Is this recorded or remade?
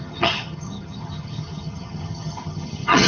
remade